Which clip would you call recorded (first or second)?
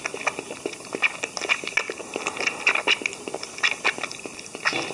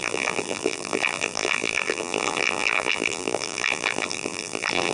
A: first